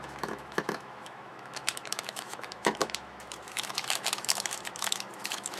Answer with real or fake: fake